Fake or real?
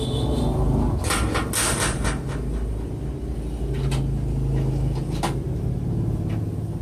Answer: real